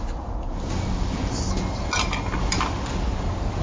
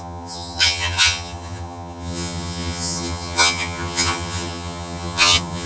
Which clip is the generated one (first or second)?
second